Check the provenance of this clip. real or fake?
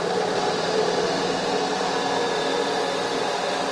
fake